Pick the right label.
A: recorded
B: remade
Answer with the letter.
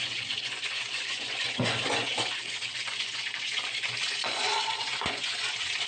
B